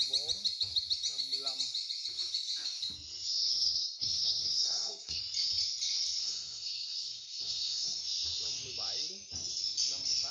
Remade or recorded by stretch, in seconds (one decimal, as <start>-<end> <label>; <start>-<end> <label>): 0.0-3.5 recorded; 3.5-5.2 remade; 5.2-6.2 recorded; 6.2-8.0 remade; 8.0-10.3 recorded